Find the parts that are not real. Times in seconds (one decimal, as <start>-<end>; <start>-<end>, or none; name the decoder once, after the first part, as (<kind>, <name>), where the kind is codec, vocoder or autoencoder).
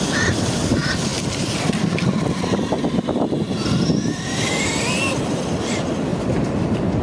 none